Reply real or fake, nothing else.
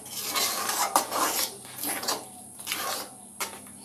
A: real